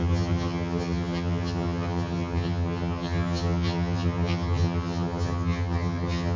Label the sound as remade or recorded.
remade